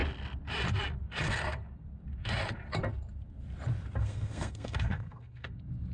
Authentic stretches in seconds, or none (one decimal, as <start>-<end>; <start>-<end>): 0.0-4.0; 5.5-5.9